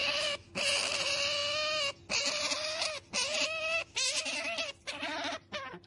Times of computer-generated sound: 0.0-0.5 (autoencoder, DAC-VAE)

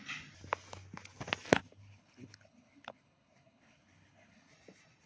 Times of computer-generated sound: 1.5-4.5 (codec, HILCodec)

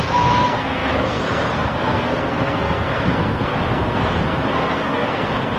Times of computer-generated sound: 0.0-5.6 (codec, SNAC)

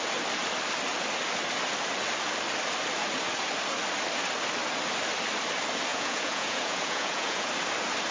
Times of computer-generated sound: 5.9-7.5 (vocoder, Vocos)

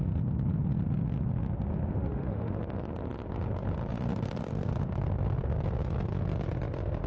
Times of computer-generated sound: 2.0-2.5 (autoencoder, DAC-VAE)

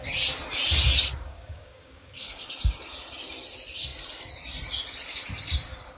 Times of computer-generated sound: 1.1-2.8 (codec, DAC)